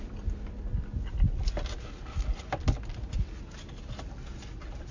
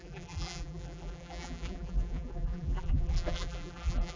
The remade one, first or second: second